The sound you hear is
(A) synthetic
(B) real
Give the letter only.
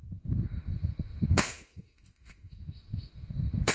A